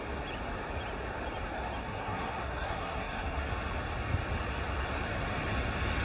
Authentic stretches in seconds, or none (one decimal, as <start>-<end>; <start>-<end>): 0.0-1.8; 3.5-6.0